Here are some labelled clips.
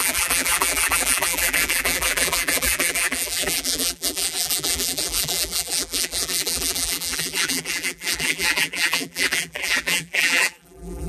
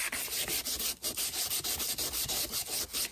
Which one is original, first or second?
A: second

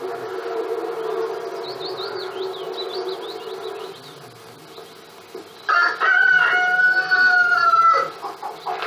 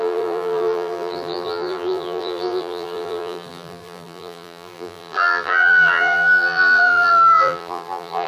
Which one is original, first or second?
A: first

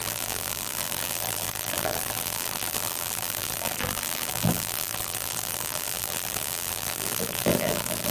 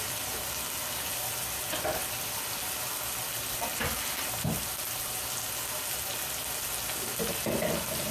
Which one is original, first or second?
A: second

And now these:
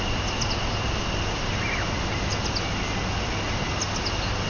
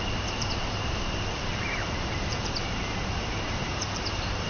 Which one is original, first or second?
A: first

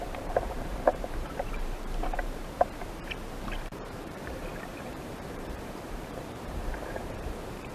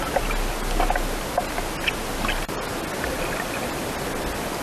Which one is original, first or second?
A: second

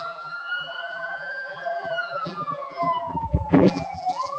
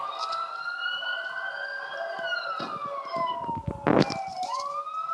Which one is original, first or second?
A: second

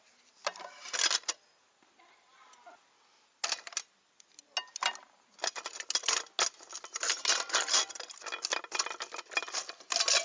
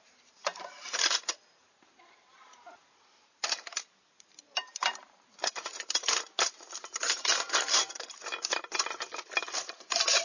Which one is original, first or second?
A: first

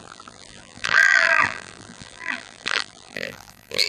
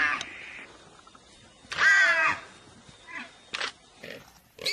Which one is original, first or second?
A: second